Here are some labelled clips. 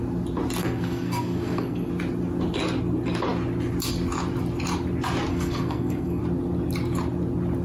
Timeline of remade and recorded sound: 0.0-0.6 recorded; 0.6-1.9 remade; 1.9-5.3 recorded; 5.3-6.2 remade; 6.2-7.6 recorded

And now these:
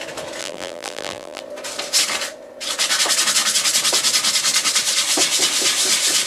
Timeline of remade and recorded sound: 0.0-0.4 recorded; 0.4-1.4 remade; 1.4-6.3 recorded

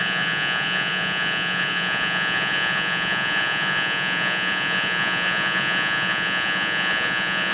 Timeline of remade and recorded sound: 0.0-7.5 remade

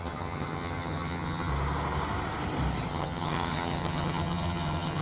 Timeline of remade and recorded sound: 0.0-1.5 remade; 1.5-2.9 recorded; 2.9-5.0 remade

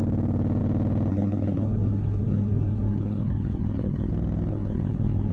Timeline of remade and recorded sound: 0.0-1.1 recorded; 1.1-4.1 remade; 4.1-4.5 recorded; 4.5-5.3 remade